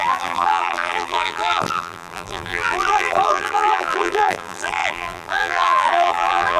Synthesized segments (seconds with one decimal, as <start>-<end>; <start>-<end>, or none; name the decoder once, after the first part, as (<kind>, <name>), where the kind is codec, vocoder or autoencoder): 0.0-6.6 (vocoder, BigVGAN v2)